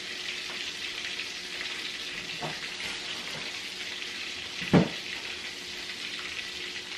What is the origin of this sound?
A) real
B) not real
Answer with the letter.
A